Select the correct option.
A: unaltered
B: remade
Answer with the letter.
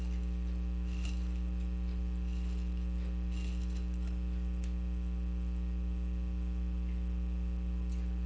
A